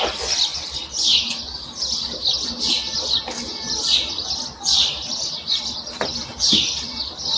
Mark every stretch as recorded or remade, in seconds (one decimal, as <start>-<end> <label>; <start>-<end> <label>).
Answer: 0.0-7.4 recorded